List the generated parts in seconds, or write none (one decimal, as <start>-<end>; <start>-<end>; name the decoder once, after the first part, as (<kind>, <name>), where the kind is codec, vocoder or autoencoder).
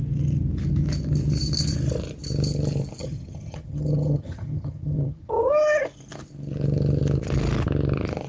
3.0-5.5 (vocoder, HiFi-GAN)